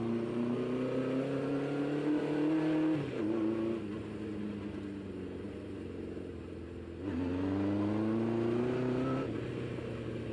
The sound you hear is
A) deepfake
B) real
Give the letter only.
B